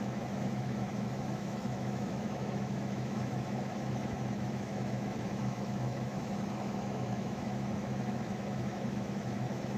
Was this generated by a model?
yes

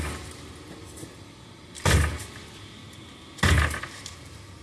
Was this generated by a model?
no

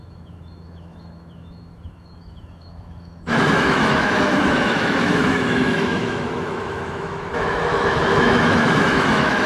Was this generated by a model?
yes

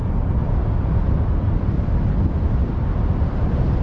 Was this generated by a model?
no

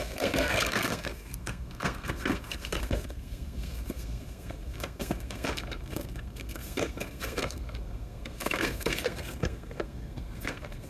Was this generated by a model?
yes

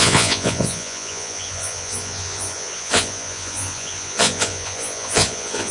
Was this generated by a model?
yes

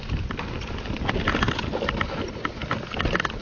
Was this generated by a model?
no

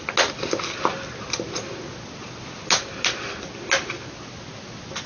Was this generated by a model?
no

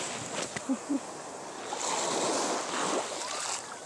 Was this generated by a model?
no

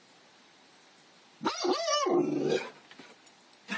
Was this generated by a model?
no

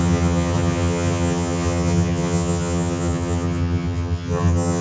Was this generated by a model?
yes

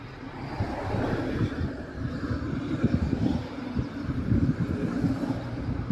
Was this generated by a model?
no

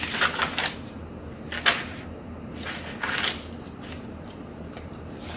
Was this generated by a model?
no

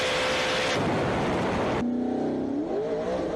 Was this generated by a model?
no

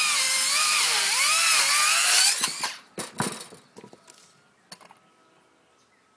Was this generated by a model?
no